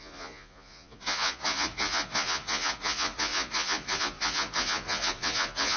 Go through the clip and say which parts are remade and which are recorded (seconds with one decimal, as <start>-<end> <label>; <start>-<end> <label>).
0.0-5.8 remade